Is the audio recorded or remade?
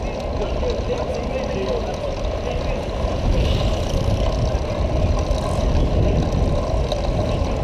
recorded